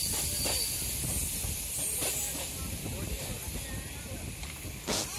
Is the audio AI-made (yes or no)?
no